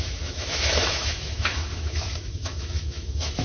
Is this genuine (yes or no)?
no